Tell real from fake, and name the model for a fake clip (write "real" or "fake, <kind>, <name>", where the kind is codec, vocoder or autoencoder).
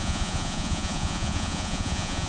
fake, vocoder, Vocos